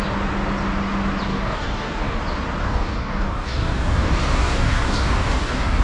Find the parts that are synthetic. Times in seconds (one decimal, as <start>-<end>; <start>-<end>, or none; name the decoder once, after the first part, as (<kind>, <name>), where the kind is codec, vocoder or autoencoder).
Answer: 1.3-2.2 (codec, DAC); 2.6-5.8

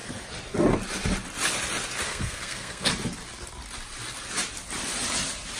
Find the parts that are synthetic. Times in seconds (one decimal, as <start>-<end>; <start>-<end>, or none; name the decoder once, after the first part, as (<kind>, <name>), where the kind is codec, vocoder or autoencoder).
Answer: 2.1-2.9 (codec, SNAC)

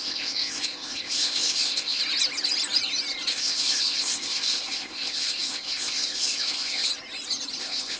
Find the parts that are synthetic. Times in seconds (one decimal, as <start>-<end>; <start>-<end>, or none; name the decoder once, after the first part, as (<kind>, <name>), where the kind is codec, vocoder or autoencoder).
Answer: 0.0-2.0 (codec, ZipCodec); 3.3-6.9; 7.6-8.0

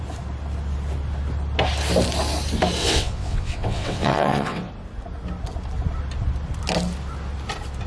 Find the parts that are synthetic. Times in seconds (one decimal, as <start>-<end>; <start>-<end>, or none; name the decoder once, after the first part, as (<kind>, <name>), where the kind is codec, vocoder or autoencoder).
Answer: 2.8-4.7 (vocoder, WaveNeXt)